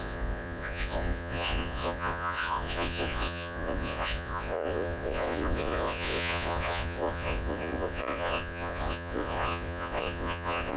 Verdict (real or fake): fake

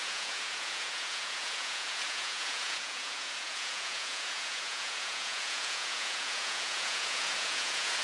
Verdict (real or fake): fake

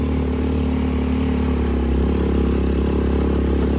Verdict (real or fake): real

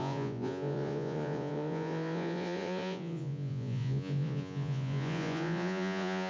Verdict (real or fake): fake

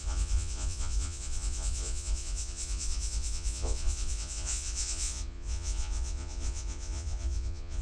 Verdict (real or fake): fake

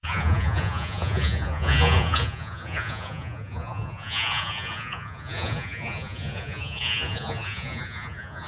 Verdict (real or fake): fake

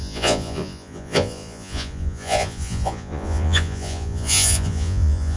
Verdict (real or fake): fake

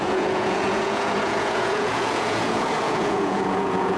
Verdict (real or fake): fake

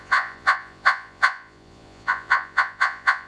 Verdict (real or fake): fake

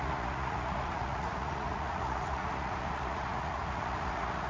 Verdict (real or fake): fake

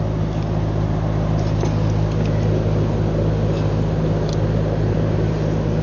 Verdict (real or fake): real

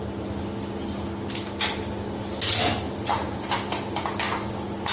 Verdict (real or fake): real